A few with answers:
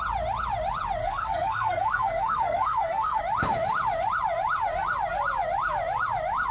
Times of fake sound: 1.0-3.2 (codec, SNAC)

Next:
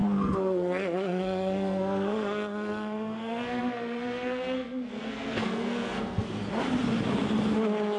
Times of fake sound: 0.0-6.4 (codec, SNAC)

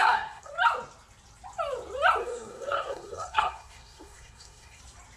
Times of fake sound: 0.0-0.5 (codec, SNAC); 2.2-4.8

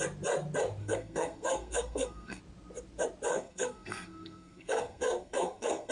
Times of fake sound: 0.8-2.4 (codec, SNAC); 3.3-5.9

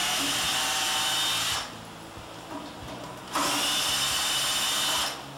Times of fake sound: none

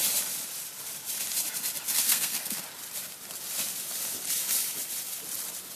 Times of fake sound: 2.0-2.6 (codec, SNAC)